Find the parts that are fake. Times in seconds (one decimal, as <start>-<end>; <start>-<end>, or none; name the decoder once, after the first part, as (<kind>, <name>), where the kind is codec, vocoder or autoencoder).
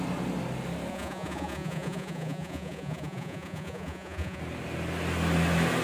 0.9-4.4 (vocoder, Vocos)